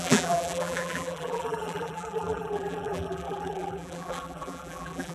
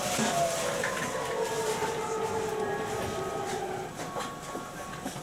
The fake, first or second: first